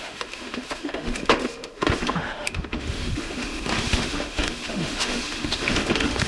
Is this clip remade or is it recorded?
remade